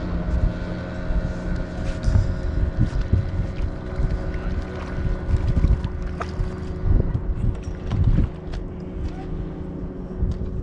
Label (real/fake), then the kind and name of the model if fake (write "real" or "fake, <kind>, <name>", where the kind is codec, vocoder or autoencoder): real